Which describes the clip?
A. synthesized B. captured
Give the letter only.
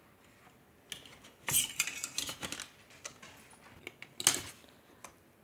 B